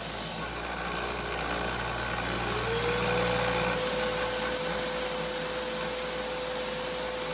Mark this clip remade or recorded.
recorded